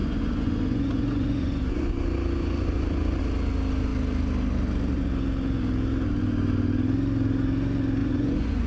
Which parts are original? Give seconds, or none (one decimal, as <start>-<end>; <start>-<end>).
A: 3.2-8.0